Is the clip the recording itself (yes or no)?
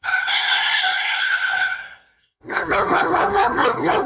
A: no